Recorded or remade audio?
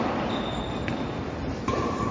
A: recorded